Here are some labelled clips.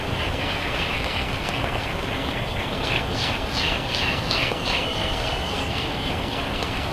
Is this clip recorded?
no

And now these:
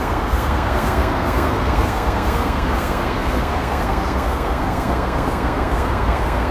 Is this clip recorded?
no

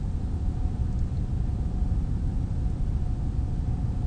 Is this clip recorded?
yes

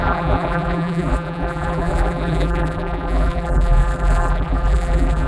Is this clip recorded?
no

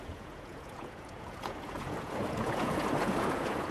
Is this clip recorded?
no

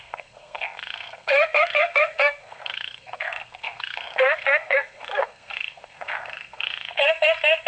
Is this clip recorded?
no